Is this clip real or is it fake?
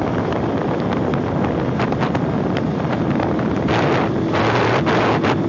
real